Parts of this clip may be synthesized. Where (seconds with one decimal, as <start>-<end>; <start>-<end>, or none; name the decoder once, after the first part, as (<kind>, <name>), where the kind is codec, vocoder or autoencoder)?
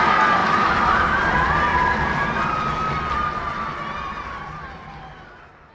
none